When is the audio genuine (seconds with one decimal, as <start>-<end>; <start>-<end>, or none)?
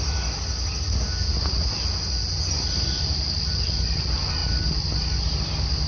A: 0.0-5.9